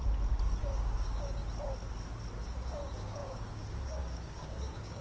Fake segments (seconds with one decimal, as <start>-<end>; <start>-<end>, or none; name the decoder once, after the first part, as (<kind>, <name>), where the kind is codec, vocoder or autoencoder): 0.6-1.4 (codec, DAC); 2.4-5.0